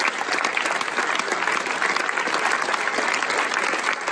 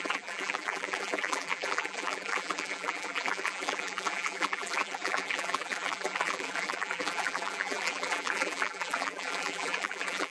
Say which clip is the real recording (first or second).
first